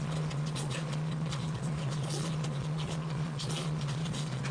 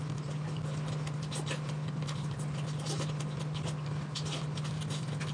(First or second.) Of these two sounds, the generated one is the first